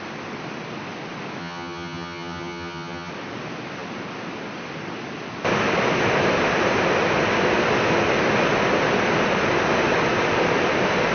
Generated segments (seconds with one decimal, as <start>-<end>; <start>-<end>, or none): 1.4-3.1